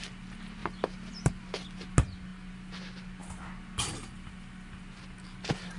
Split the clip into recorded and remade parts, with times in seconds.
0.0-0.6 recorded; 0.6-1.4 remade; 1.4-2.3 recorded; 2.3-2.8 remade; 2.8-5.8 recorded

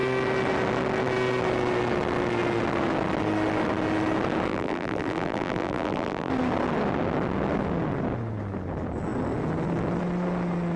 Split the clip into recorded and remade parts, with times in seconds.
0.0-4.5 recorded; 4.5-6.3 remade; 6.3-10.8 recorded

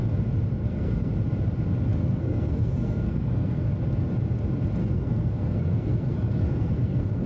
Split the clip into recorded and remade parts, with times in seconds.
0.0-0.6 recorded; 0.6-1.1 remade; 1.1-1.9 recorded; 1.9-3.7 remade; 3.7-4.8 recorded; 4.8-7.3 remade

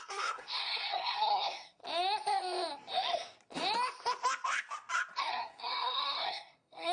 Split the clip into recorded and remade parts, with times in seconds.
0.0-1.8 remade; 1.8-5.3 recorded; 5.3-6.9 remade

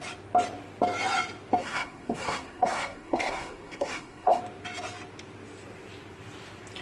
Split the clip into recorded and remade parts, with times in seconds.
0.0-1.6 recorded; 1.6-4.4 remade; 4.4-6.8 recorded

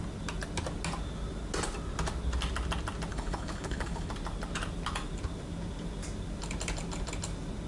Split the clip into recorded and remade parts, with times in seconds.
0.0-3.1 recorded; 3.1-4.1 remade; 4.1-7.7 recorded

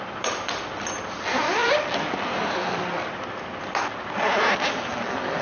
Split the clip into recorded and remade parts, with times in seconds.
0.0-5.4 recorded

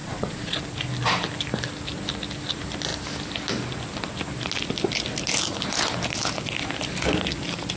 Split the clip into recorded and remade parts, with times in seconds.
0.0-0.6 remade; 0.6-7.8 recorded